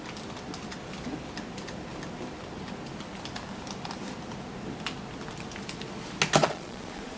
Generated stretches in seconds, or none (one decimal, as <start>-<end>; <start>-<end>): 6.4-7.2